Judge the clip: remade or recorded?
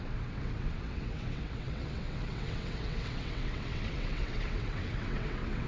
remade